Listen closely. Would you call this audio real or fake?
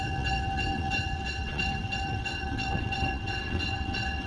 fake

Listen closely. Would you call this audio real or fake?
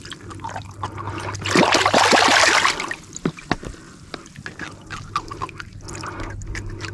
real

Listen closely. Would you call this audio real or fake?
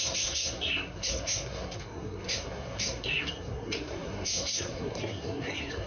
fake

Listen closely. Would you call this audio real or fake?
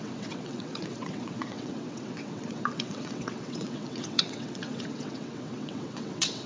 fake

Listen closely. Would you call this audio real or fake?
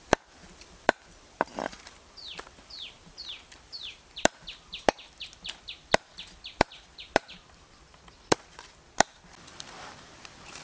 fake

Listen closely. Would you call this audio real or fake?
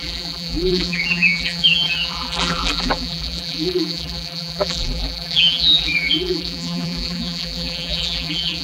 fake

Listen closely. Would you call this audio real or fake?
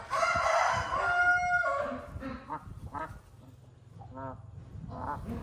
real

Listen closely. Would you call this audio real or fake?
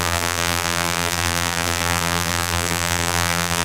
fake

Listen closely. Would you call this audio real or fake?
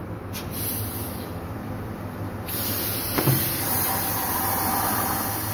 fake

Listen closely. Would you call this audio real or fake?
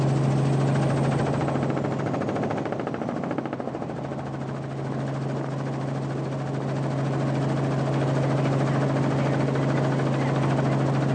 real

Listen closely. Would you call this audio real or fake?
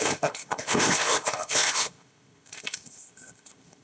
fake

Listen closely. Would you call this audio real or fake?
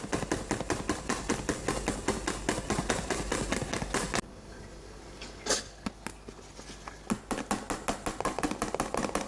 real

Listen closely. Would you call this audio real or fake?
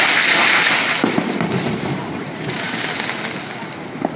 real